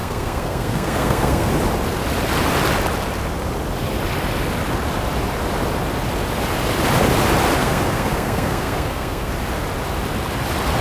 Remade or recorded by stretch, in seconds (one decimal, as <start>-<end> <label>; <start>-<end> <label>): 0.0-1.5 remade; 1.5-7.6 recorded; 7.6-9.3 remade; 9.3-10.8 recorded